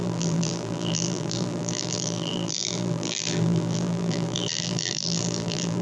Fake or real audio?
fake